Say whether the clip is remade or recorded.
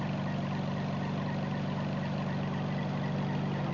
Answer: recorded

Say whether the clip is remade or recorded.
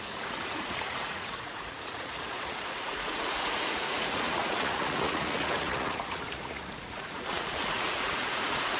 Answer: remade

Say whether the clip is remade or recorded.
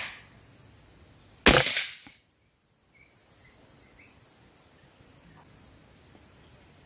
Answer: recorded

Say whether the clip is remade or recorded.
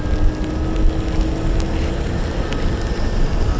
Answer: recorded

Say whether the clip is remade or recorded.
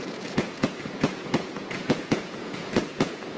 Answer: remade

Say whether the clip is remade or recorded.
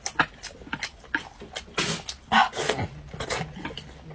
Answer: recorded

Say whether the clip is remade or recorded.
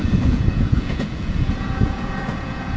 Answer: remade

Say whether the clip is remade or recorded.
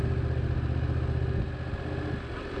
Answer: recorded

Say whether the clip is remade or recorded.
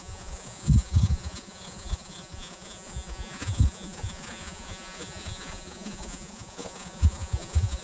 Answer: remade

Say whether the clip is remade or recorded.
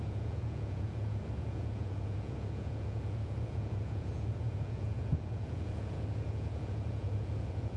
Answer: remade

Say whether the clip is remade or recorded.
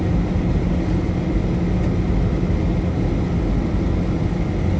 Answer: recorded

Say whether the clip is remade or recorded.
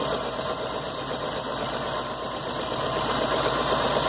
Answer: recorded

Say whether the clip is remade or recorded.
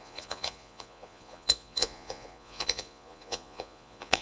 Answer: remade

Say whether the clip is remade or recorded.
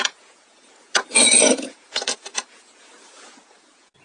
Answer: remade